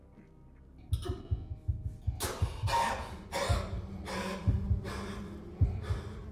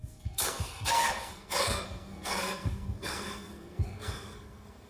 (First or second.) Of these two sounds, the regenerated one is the second